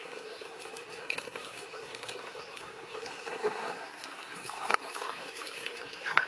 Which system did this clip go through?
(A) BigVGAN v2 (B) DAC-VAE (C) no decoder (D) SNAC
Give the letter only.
D